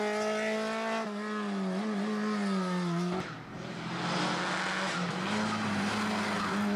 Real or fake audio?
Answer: real